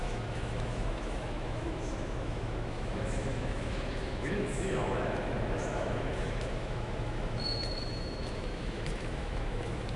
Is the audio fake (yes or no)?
yes